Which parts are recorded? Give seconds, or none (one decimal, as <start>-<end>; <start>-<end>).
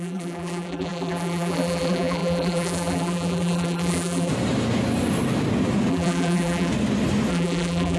4.3-5.9; 6.7-7.3